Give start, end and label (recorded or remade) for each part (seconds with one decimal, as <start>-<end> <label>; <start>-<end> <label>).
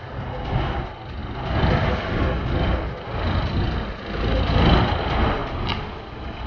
0.0-6.5 recorded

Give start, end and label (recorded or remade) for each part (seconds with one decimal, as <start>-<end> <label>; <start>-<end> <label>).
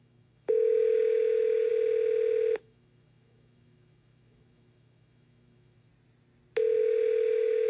0.0-1.7 remade; 1.7-2.6 recorded; 2.6-5.9 remade; 5.9-6.8 recorded; 6.8-7.7 remade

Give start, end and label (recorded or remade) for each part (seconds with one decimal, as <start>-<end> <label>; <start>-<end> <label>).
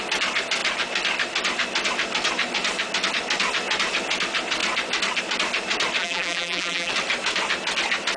0.0-6.0 recorded; 6.0-6.9 remade; 6.9-8.2 recorded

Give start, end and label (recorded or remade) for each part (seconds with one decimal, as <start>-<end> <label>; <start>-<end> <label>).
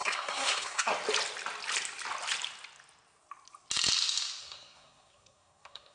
0.0-0.9 remade; 0.9-4.4 recorded; 4.4-5.9 remade